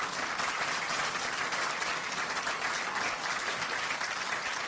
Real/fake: real